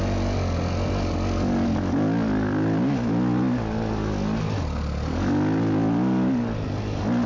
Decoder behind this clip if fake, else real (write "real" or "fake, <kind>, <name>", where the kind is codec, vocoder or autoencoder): real